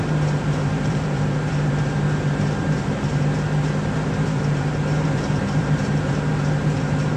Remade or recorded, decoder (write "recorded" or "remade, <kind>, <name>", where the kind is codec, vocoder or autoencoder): remade, vocoder, BigVGAN v2